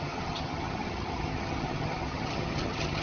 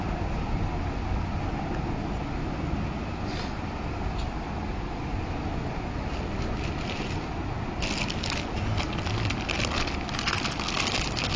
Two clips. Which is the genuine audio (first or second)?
second